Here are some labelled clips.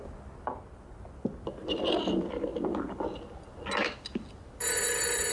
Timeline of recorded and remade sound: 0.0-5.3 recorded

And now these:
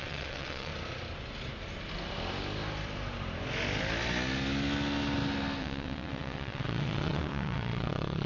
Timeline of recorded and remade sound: 0.0-0.7 remade; 0.7-5.6 recorded; 5.6-8.3 remade